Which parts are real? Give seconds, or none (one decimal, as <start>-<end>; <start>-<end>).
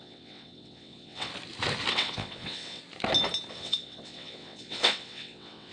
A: 1.3-1.9; 2.8-3.5